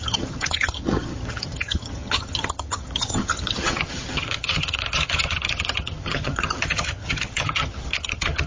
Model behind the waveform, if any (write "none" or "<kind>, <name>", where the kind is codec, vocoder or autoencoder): vocoder, HiFi-GAN